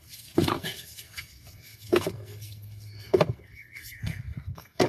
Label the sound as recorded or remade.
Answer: remade